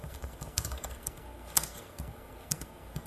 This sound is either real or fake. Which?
fake